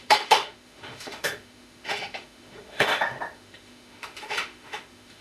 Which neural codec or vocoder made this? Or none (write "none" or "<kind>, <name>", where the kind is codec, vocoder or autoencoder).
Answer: autoencoder, DAC-VAE